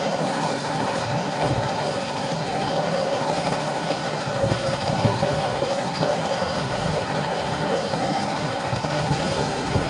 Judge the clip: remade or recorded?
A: remade